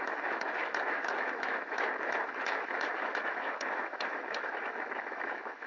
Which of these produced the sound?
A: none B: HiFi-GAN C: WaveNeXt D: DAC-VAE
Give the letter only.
D